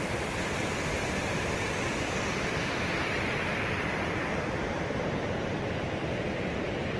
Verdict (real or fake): real